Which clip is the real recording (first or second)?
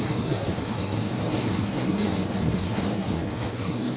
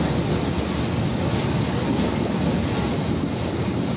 second